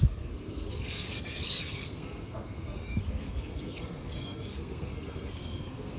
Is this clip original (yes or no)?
no